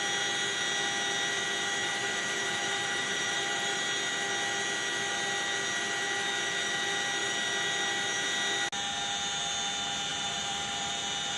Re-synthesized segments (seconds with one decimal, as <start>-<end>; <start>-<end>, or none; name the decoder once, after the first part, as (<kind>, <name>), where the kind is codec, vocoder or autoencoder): 1.8-3.8 (vocoder, BigVGAN v2); 10.1-10.9